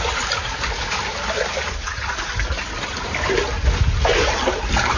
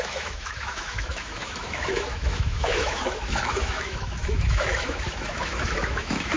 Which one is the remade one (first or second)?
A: second